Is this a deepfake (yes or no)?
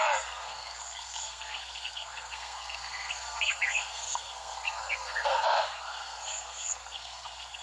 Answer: yes